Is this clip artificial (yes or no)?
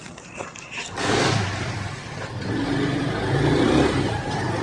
yes